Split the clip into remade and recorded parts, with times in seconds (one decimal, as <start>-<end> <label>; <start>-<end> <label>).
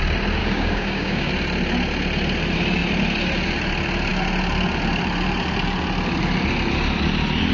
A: 0.0-0.4 recorded; 0.4-1.3 remade; 1.3-7.5 recorded